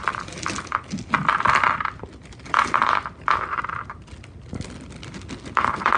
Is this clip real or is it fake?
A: real